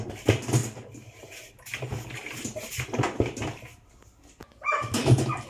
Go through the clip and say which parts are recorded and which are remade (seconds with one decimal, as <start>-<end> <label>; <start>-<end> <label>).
0.0-5.5 recorded

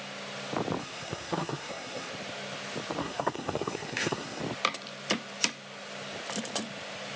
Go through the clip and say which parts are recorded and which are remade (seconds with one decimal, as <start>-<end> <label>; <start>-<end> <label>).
0.0-0.8 recorded; 0.8-2.1 remade; 2.1-3.0 recorded; 3.0-4.4 remade; 4.4-7.2 recorded

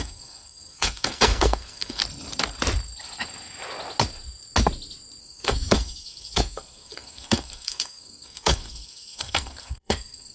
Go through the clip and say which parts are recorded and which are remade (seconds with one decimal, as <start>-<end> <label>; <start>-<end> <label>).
0.0-2.0 remade; 2.0-5.2 recorded; 5.2-10.3 remade

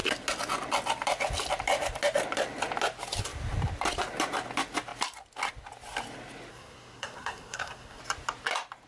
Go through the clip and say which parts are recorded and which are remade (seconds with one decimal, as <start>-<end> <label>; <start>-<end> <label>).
0.0-6.5 recorded; 6.5-8.0 remade; 8.0-8.9 recorded

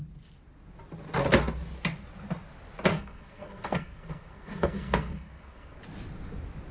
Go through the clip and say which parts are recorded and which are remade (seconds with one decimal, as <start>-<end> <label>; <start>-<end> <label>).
0.0-2.9 recorded; 2.9-5.8 remade; 5.8-6.7 recorded

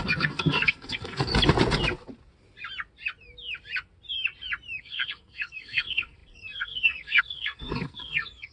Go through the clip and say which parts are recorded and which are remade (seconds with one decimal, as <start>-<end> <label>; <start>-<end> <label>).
0.0-1.3 remade; 1.3-4.8 recorded; 4.8-8.5 remade

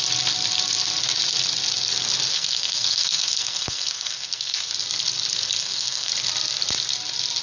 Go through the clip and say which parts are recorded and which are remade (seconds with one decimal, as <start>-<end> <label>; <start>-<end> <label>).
0.0-2.3 recorded; 2.3-4.7 remade; 4.7-5.6 recorded; 5.6-6.1 remade; 6.1-7.4 recorded